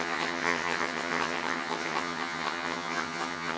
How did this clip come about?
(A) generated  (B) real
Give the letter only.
A